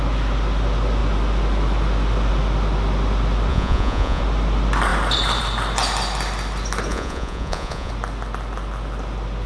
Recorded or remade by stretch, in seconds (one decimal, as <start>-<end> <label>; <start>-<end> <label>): 0.0-3.5 recorded; 3.5-4.2 remade; 4.2-6.9 recorded; 6.9-7.9 remade; 7.9-9.5 recorded